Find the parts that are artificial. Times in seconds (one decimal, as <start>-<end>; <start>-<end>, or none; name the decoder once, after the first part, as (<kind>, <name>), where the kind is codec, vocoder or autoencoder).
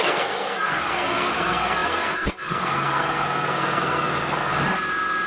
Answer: 0.0-4.5 (codec, SNAC)